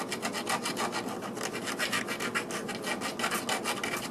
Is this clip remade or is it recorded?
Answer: recorded